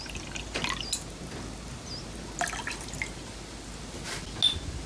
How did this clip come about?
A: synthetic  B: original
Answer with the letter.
B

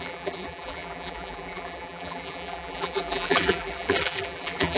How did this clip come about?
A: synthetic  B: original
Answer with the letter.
A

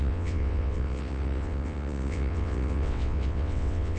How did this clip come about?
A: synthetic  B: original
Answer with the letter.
A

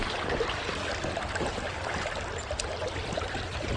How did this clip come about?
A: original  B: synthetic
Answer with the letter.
A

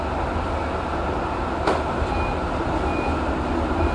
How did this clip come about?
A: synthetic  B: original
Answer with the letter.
B